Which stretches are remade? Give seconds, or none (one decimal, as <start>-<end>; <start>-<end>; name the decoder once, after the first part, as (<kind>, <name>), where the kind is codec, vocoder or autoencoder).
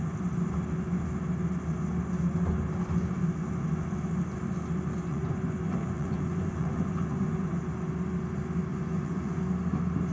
5.1-7.6 (vocoder, Vocos); 8.7-9.4